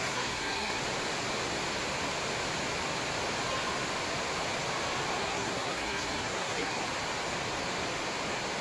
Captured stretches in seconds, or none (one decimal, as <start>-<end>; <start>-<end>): 0.8-5.2; 6.8-8.6